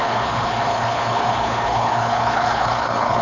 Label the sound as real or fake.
fake